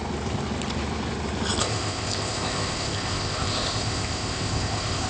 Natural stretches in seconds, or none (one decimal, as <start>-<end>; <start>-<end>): 0.0-1.6